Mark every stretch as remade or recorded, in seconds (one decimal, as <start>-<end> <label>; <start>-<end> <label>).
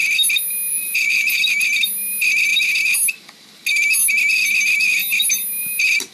0.0-0.7 recorded; 0.7-1.4 remade; 1.4-6.1 recorded